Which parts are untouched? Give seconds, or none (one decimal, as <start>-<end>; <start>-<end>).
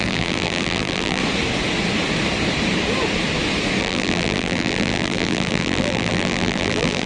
1.2-3.8